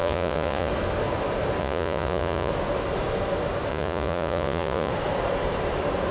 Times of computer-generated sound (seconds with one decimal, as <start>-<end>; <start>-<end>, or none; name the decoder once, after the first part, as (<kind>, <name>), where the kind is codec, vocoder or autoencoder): 0.0-0.7 (vocoder, Vocos); 1.6-2.5; 3.7-4.9